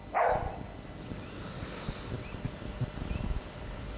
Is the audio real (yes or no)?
yes